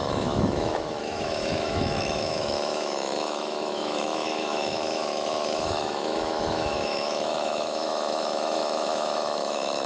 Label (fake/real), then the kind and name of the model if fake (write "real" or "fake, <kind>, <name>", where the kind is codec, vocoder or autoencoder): fake, autoencoder, DAC-VAE